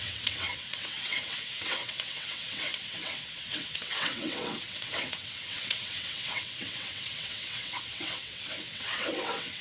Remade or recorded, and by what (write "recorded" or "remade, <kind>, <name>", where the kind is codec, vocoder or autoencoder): remade, vocoder, WaveNeXt